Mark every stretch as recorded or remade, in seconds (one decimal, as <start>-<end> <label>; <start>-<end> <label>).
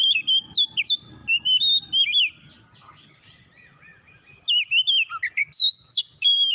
0.0-6.5 recorded